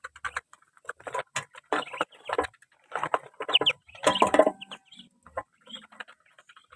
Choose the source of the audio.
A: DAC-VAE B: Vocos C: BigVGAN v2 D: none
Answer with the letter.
D